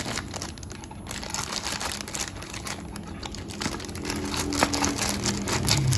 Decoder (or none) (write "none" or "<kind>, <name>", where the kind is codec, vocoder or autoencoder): none